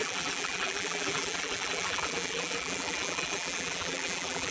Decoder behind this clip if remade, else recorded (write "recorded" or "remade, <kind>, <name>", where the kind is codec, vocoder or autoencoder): remade, vocoder, BigVGAN v2